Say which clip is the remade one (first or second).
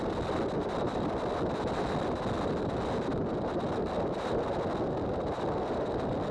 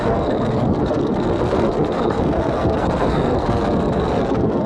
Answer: second